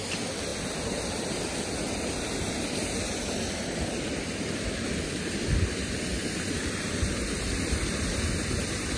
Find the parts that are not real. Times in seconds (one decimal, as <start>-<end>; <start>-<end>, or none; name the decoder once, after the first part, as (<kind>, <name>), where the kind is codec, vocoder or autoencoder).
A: none